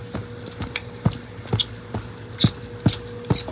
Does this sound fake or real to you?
real